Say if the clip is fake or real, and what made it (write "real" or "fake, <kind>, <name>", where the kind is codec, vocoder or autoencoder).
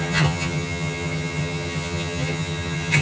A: fake, vocoder, HiFi-GAN